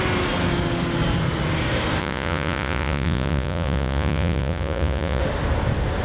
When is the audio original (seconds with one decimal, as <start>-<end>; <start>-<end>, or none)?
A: 0.0-2.0; 5.2-6.0